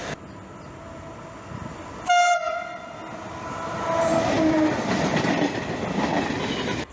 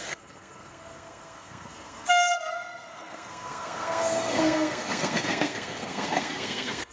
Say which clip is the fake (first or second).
second